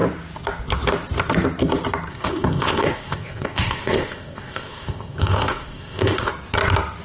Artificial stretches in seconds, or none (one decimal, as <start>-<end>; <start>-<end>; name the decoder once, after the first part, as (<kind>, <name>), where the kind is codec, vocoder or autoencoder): 2.1-6.3 (codec, ZipCodec)